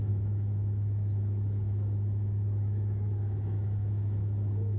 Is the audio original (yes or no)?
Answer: no